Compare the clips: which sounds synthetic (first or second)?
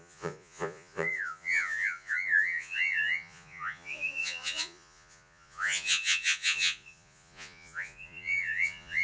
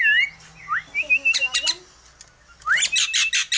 first